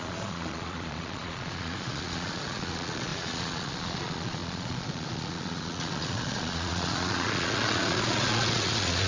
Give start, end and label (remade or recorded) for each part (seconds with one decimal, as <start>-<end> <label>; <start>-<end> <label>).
0.0-9.1 remade